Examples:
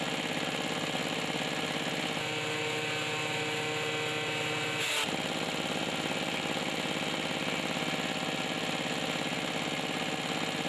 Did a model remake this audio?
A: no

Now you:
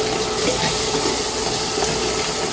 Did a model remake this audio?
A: no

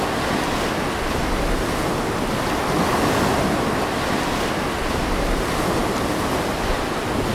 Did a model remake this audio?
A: no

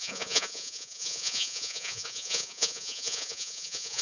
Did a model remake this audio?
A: yes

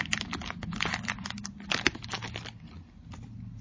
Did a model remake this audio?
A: no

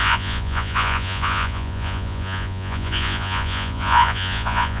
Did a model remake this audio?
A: yes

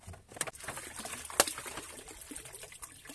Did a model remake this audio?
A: no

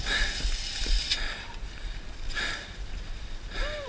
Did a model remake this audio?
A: no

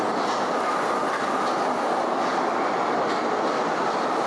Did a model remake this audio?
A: no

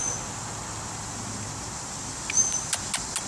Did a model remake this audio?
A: no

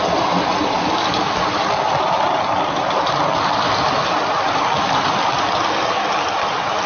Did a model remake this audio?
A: no